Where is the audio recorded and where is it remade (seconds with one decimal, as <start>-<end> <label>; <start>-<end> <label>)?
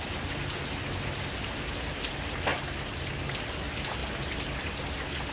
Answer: 0.0-5.3 recorded